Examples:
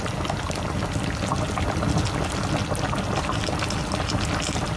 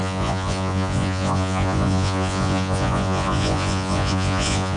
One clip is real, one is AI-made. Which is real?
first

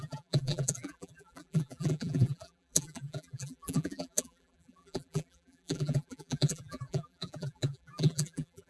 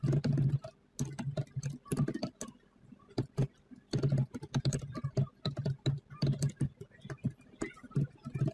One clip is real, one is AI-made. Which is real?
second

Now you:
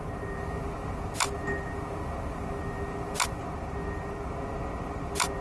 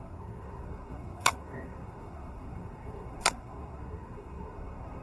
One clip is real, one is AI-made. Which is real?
first